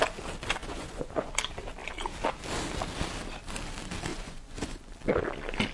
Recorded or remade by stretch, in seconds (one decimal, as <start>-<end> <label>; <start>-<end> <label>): 0.0-0.6 recorded; 0.6-1.3 remade; 1.3-4.1 recorded; 4.1-4.9 remade; 4.9-5.7 recorded